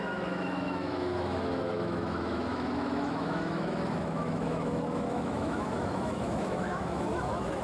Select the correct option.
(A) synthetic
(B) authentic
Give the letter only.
A